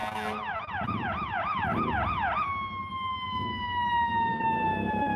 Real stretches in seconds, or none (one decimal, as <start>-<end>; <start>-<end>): 0.0-5.2